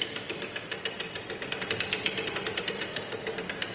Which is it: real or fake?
real